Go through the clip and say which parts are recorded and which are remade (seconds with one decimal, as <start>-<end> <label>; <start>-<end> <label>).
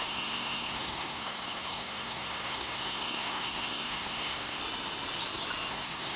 0.0-4.6 remade; 4.6-5.7 recorded; 5.7-6.2 remade